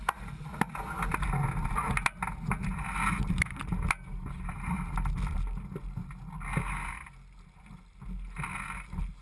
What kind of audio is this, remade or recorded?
recorded